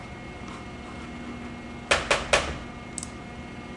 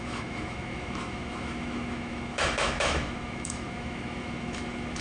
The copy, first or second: second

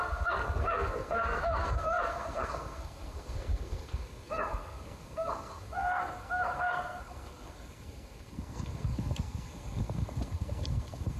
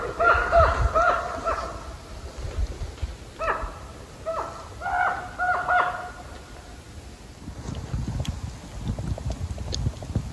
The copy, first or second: first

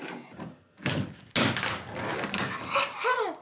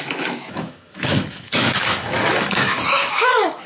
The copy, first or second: second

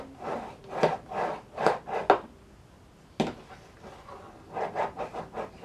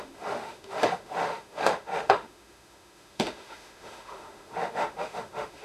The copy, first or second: second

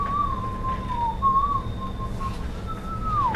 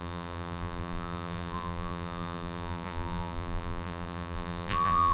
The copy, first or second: second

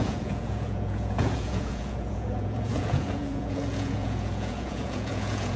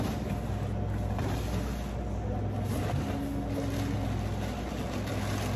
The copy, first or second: first